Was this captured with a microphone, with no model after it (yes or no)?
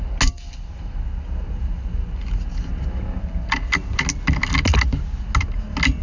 yes